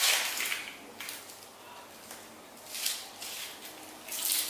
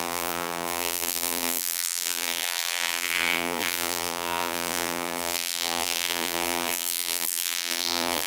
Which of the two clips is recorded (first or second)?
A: first